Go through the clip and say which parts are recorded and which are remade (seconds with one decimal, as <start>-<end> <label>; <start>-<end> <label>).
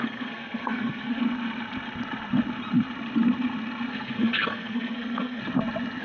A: 0.0-1.2 remade; 1.2-3.9 recorded; 3.9-5.4 remade; 5.4-6.0 recorded